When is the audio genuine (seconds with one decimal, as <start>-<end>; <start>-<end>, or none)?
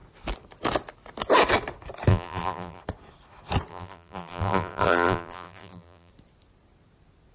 0.0-2.1; 2.8-3.7; 6.1-7.3